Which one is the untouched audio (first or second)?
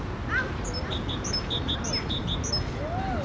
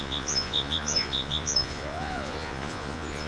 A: first